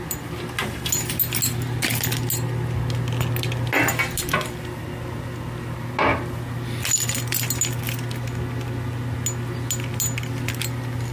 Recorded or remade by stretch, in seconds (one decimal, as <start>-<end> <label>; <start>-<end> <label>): 0.0-11.1 recorded

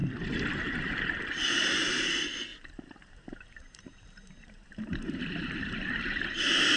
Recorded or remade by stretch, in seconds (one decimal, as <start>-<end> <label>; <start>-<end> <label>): 0.0-2.5 recorded; 2.5-6.8 remade